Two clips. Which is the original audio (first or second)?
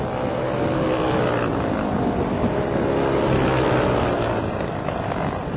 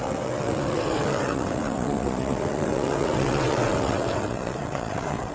first